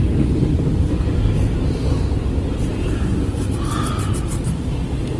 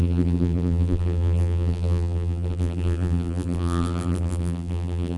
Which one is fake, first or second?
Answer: second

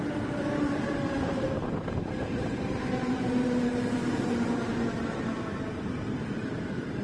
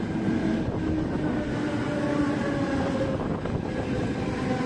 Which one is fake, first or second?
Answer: first